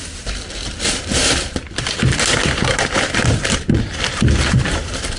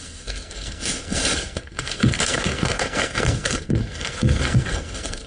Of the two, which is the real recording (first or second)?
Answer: first